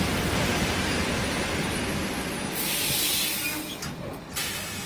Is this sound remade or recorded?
recorded